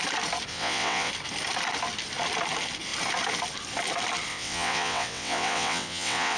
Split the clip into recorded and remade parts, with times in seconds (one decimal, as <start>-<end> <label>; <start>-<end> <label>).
0.0-0.5 recorded; 0.5-1.1 remade; 1.1-4.3 recorded; 4.3-6.4 remade

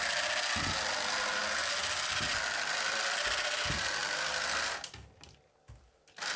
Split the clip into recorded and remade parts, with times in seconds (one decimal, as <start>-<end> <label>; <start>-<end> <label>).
0.0-6.4 recorded

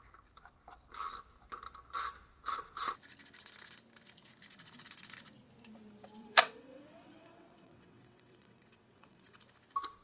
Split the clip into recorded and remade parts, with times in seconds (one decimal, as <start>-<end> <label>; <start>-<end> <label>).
0.0-6.2 recorded; 6.2-9.4 remade; 9.4-10.0 recorded